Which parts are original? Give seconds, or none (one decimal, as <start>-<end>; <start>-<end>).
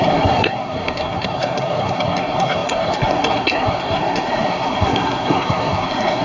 none